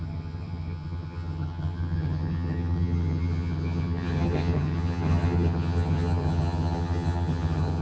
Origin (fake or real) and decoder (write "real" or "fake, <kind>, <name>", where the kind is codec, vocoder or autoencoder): fake, vocoder, HiFi-GAN